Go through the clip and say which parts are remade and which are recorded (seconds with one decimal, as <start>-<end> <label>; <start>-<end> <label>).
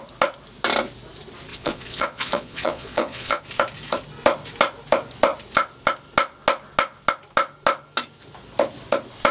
0.0-1.5 recorded; 1.5-3.4 remade; 3.4-9.3 recorded